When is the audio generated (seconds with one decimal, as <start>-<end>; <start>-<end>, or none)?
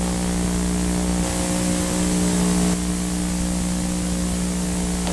none